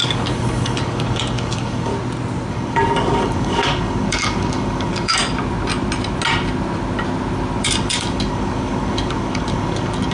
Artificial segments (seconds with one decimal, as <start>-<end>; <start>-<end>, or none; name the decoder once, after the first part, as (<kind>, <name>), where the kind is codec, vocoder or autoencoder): 0.0-1.9 (codec, DAC); 2.5-5.2; 7.6-10.1